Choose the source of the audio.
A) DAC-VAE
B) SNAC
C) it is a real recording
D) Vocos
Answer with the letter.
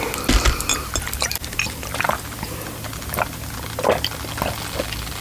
C